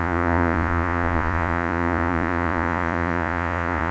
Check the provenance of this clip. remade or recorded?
remade